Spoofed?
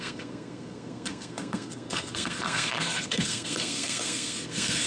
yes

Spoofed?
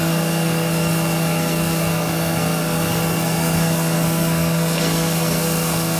yes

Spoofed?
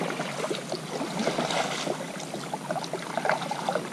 no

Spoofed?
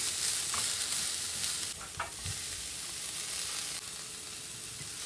no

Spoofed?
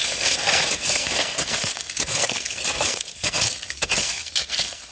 yes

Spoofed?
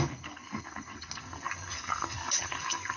yes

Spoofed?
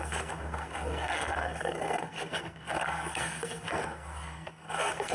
yes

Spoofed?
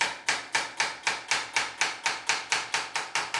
no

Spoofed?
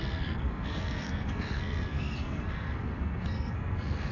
yes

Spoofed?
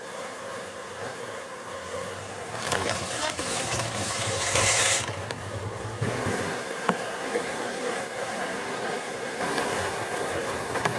yes